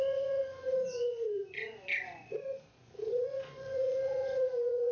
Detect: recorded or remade remade